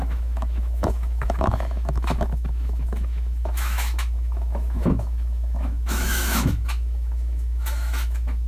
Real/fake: fake